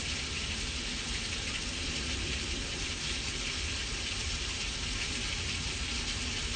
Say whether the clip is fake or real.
real